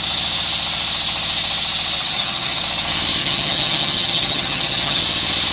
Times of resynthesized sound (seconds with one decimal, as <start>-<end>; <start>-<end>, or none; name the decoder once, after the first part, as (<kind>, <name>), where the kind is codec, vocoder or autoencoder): 2.0-2.6 (vocoder, HiFi-GAN); 3.2-5.0